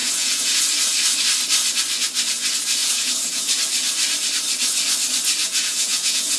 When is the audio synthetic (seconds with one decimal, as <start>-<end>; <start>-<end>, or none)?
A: 0.0-0.6; 2.8-3.5; 5.4-6.4